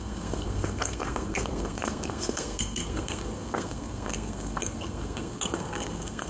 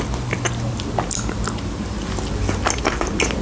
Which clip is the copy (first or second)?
first